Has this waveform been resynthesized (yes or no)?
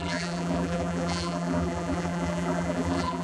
yes